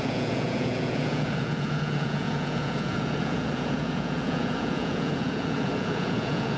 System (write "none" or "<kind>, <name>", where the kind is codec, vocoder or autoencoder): vocoder, Vocos